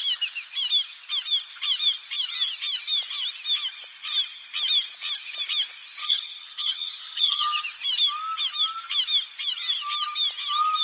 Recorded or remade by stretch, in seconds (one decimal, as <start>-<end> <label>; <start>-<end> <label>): 0.0-6.0 recorded; 6.0-7.6 remade; 7.6-10.8 recorded